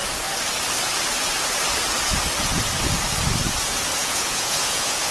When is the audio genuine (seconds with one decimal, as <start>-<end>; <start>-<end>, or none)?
0.0-4.0

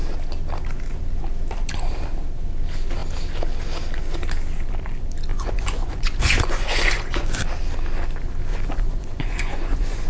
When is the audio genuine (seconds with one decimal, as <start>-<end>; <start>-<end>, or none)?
0.0-5.3; 7.4-8.5

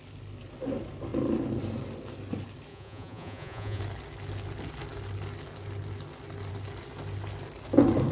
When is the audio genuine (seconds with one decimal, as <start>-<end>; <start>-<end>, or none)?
0.0-2.7; 3.8-8.1

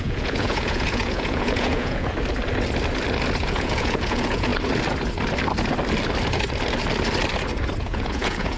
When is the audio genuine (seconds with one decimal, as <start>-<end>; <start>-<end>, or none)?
2.1-3.4; 4.5-7.8

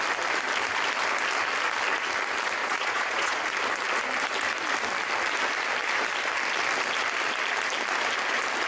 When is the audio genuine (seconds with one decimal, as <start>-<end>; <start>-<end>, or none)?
0.0-2.6; 3.4-8.7